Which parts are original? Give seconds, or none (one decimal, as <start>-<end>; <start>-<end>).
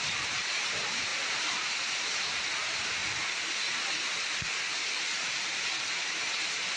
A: 3.0-5.4